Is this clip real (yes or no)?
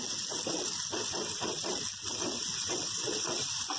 yes